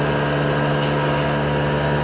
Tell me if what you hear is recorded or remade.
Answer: recorded